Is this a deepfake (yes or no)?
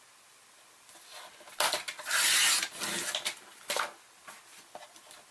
no